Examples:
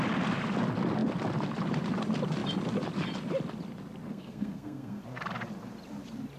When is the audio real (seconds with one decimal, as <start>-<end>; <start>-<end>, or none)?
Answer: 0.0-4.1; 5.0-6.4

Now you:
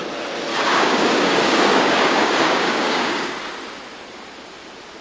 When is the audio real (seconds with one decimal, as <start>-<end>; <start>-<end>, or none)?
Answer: 0.0-0.5; 3.5-5.0

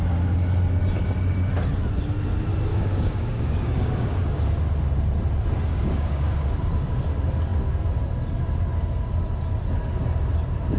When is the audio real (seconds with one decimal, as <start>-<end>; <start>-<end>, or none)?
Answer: 0.0-2.7; 4.4-5.7; 6.5-10.8

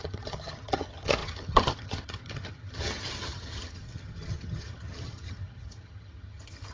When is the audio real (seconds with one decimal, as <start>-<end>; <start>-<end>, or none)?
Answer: none